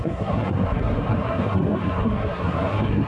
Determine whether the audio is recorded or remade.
remade